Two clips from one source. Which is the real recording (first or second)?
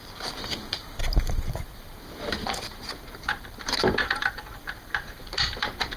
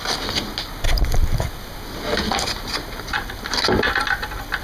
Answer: second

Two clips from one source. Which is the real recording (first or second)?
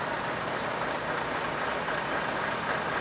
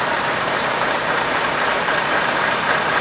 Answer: first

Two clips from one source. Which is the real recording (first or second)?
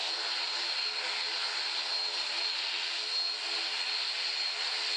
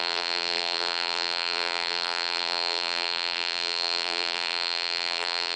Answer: first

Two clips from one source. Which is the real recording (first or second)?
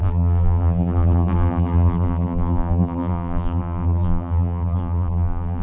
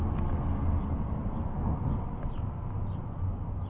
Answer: second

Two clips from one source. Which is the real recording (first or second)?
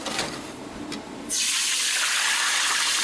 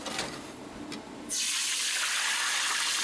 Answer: second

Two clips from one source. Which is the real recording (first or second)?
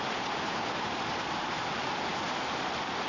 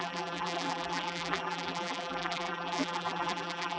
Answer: first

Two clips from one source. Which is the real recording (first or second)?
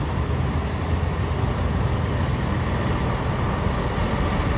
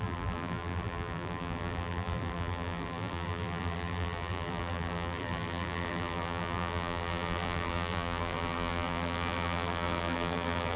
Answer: first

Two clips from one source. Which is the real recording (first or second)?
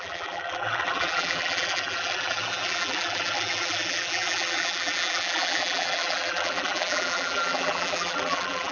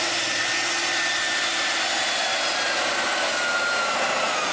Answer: second